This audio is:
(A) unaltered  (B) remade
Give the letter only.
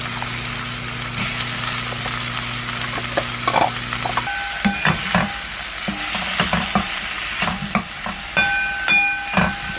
A